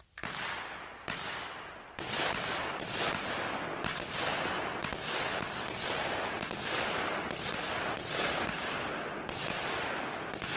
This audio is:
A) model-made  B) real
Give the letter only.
A